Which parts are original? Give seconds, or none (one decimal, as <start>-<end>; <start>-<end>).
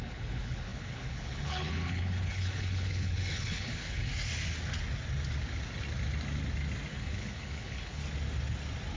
4.1-6.9; 8.0-9.0